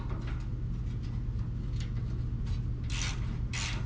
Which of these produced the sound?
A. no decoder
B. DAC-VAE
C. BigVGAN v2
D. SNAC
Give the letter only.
A